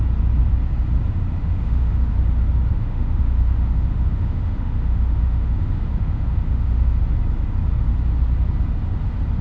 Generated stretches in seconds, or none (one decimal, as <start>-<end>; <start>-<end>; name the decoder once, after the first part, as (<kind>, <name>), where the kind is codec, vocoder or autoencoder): 1.4-2.1 (autoencoder, DAC-VAE); 2.7-7.0

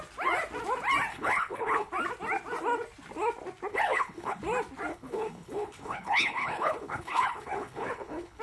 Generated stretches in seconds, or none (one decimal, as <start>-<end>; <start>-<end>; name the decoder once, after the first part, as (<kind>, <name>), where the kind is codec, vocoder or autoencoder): 1.1-1.9 (codec, HILCodec); 3.7-4.4; 4.9-8.4

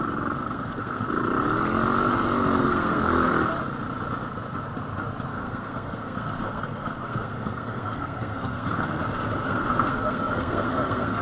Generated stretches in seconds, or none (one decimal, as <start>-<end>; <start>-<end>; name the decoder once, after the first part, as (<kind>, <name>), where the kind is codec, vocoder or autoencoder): 0.4-1.1 (codec, SNAC); 2.6-3.3; 5.3-9.0; 9.4-11.2

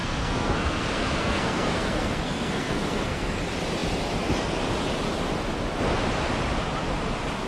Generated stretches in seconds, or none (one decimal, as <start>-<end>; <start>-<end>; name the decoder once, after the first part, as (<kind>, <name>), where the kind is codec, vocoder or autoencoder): 0.0-3.4 (codec, SNAC)

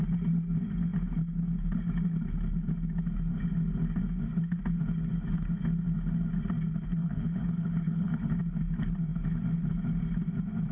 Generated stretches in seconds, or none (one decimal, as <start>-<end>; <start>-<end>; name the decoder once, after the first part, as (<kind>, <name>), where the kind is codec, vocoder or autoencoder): 7.0-8.4 (codec, HILCodec)

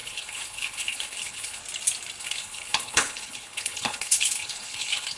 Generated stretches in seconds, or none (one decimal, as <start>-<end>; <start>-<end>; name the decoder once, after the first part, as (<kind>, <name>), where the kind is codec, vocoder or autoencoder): 0.0-1.6 (codec, HILCodec); 2.2-5.2

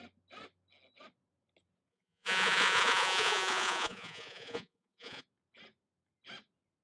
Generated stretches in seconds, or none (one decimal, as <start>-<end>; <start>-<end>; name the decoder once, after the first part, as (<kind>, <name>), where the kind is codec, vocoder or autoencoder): 1.9-5.2 (vocoder, Vocos)